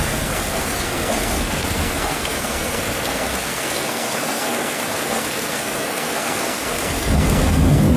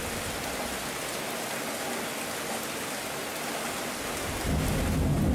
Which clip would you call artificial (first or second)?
first